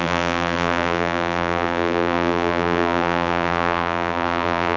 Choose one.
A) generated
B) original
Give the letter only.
A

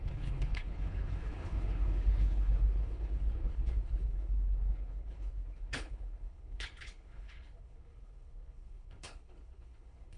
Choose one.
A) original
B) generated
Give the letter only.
B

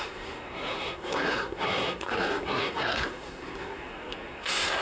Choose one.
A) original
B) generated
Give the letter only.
B